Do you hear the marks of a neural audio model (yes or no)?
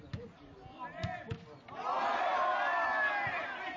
no